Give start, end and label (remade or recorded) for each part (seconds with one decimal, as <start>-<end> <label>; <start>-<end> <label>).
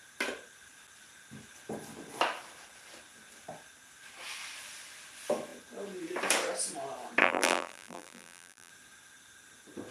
0.0-7.2 recorded; 7.2-8.7 remade; 8.7-9.9 recorded